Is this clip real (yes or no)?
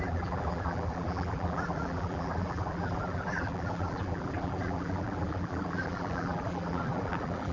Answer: no